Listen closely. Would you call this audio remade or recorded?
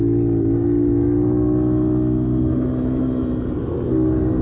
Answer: recorded